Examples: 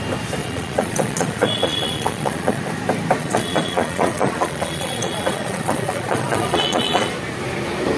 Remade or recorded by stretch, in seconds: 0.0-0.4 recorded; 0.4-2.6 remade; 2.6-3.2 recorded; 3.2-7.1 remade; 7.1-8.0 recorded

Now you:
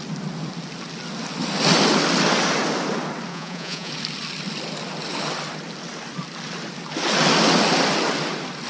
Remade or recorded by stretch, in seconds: 0.0-3.3 recorded; 3.3-3.9 remade; 3.9-8.7 recorded

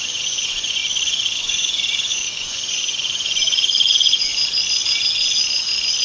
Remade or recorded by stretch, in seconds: 0.0-0.8 remade; 0.8-1.4 recorded; 1.4-4.3 remade; 4.3-6.0 recorded

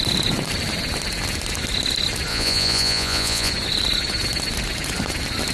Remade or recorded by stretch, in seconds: 0.0-2.3 recorded; 2.3-3.5 remade; 3.5-5.5 recorded

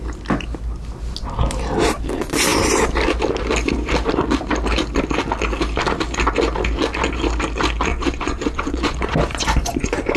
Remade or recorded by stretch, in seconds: 0.0-7.9 recorded; 7.9-10.2 remade